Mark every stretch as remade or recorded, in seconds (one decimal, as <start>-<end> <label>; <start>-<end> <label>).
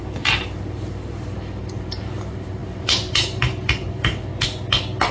0.0-4.3 remade; 4.3-5.1 recorded